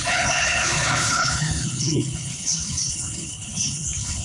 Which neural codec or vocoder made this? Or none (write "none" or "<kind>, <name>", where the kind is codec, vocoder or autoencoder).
codec, HILCodec